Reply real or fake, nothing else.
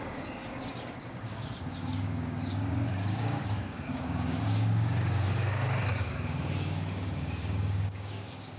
fake